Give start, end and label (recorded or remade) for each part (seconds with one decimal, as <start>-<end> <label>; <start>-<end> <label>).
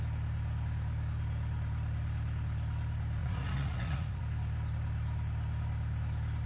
0.0-3.2 recorded; 3.2-4.2 remade; 4.2-6.5 recorded